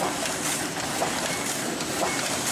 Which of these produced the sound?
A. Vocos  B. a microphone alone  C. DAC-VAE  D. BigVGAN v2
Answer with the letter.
B